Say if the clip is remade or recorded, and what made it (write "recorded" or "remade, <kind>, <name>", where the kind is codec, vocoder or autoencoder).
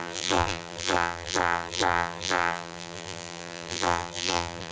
remade, vocoder, BigVGAN v2